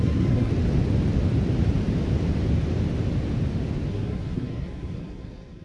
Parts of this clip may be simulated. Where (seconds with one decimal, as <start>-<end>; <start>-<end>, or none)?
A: 0.0-0.5; 3.9-5.6